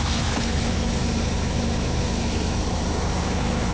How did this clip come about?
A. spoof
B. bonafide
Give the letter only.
A